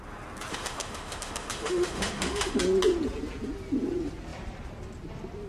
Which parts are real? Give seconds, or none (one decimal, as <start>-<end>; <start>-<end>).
0.0-0.5; 2.6-5.5